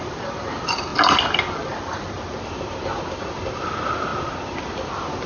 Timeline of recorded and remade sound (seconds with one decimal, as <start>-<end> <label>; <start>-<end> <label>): 0.0-5.3 recorded